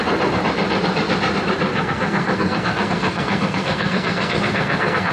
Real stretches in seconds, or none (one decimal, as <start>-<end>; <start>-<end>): 0.0-1.7